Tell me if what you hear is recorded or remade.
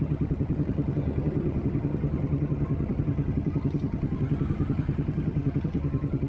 remade